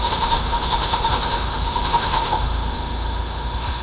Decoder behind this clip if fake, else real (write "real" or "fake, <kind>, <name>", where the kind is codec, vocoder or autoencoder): fake, autoencoder, DAC-VAE